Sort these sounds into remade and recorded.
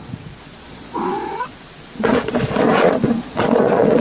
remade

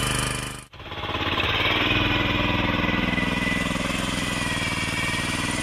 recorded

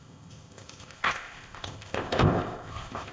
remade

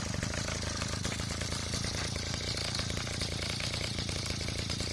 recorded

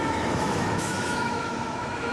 remade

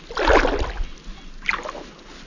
recorded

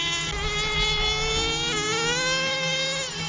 recorded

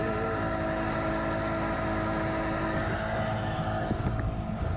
recorded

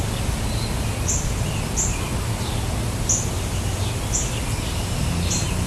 recorded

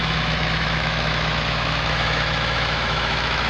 remade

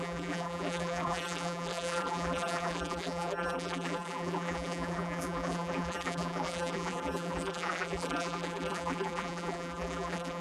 remade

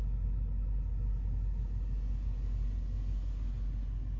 recorded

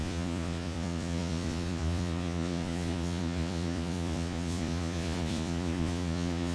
remade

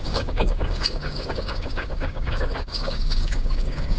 remade